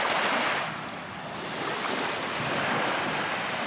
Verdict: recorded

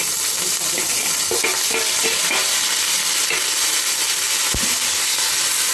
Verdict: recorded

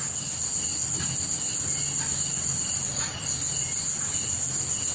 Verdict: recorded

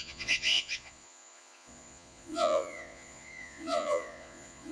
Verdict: remade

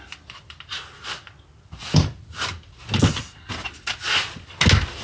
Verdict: recorded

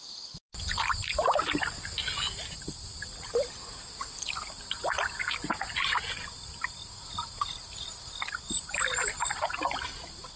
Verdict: recorded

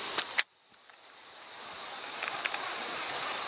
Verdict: recorded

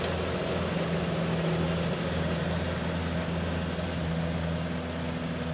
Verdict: recorded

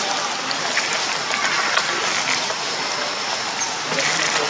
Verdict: recorded